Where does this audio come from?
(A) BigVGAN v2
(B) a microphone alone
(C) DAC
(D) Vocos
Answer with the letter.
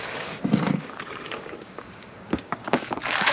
C